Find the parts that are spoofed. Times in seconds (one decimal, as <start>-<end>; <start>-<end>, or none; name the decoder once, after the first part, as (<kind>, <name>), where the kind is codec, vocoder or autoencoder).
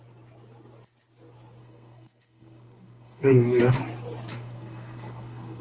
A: 1.6-3.6 (codec, SNAC); 4.3-5.6